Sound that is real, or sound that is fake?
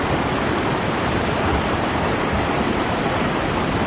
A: real